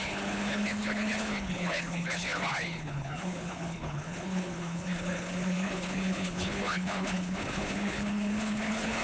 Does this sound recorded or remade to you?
remade